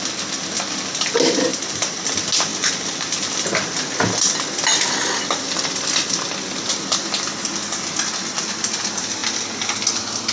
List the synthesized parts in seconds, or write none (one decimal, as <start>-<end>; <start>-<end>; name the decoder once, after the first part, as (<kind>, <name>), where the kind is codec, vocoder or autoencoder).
1.5-2.1 (vocoder, BigVGAN v2); 2.5-5.8; 9.2-9.7